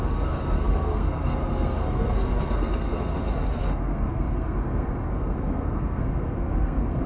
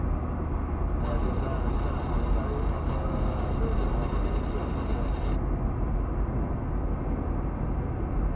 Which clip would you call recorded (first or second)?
second